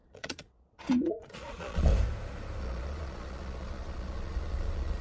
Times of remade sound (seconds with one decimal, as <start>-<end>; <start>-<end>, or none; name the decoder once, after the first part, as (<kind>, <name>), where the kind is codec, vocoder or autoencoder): 0.0-1.9 (vocoder, Vocos); 2.6-5.0